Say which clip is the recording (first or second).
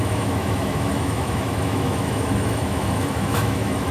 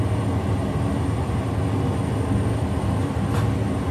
second